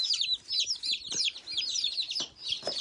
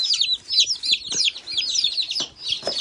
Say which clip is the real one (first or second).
second